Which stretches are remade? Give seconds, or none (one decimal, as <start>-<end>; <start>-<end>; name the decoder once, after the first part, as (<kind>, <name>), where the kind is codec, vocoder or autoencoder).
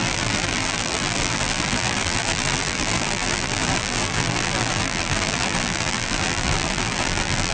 0.0-7.5 (vocoder, BigVGAN v2)